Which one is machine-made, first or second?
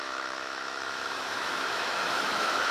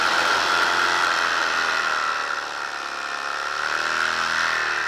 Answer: first